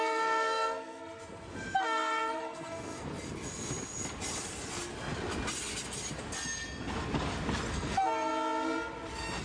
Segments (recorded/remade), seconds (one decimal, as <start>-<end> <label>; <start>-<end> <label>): 0.0-1.2 remade; 1.2-1.8 recorded; 1.8-3.1 remade; 3.1-7.7 recorded; 7.7-8.3 remade; 8.3-9.4 recorded

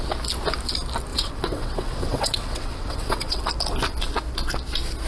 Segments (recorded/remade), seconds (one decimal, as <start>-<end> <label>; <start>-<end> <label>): 0.0-1.1 recorded; 1.1-3.4 remade; 3.4-5.1 recorded